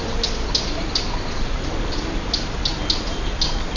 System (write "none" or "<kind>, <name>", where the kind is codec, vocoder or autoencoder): none